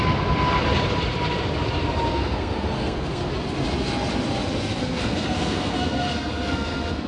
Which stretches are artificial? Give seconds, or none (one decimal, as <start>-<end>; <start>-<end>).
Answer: 2.1-3.3; 4.8-7.1